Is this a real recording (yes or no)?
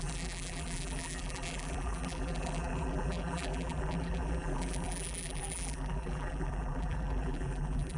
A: no